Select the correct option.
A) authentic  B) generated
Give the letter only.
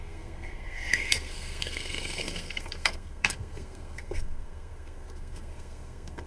B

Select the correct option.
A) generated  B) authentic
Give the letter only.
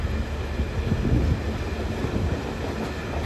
B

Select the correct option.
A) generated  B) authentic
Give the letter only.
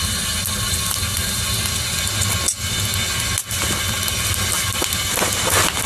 B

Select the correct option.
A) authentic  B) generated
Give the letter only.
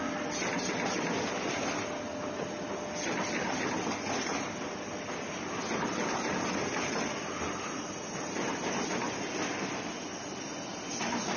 A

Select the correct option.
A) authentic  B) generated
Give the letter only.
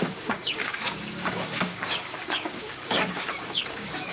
B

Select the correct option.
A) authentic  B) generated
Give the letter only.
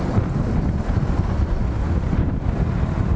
A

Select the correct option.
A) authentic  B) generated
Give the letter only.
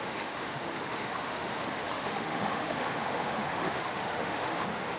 B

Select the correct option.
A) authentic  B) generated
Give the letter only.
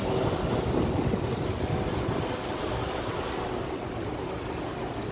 A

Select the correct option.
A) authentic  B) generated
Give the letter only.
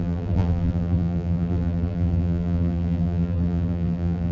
B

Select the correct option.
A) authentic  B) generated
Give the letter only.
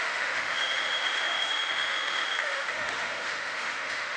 B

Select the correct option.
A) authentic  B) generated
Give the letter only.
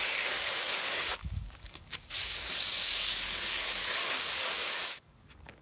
B